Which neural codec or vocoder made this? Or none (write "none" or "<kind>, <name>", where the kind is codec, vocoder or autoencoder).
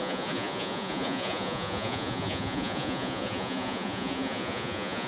vocoder, Vocos